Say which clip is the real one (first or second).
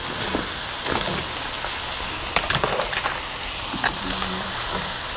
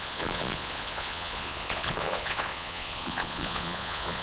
first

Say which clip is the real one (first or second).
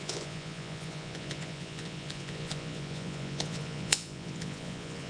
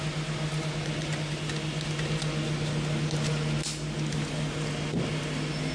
second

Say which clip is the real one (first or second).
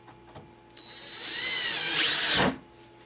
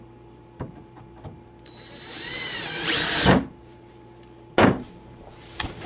first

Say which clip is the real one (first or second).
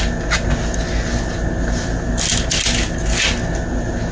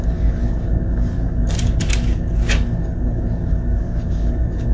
first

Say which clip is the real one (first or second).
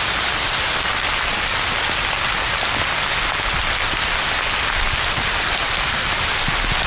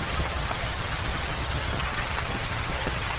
first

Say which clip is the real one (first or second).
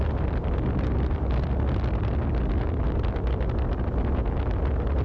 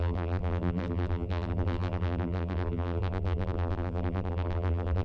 first